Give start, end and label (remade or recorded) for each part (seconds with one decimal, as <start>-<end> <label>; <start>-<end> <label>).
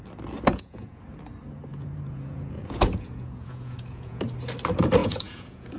0.0-0.5 recorded; 0.5-1.0 remade; 1.0-1.7 recorded; 1.7-4.2 remade; 4.2-5.0 recorded; 5.0-5.8 remade